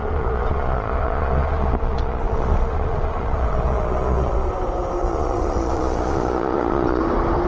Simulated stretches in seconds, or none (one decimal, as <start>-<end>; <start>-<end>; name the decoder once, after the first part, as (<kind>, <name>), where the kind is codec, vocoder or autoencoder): 0.0-4.5 (vocoder, Vocos); 5.0-7.0